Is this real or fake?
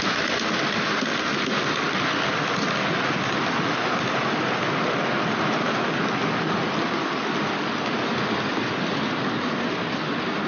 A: real